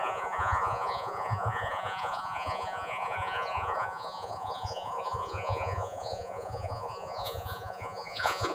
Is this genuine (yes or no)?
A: no